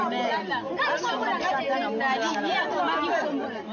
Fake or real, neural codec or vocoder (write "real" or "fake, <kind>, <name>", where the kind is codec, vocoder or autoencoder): real